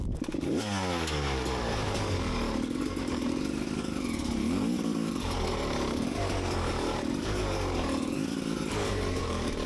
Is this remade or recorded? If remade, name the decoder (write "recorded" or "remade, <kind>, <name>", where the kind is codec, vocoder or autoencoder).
remade, codec, DAC